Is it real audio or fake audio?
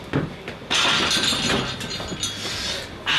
real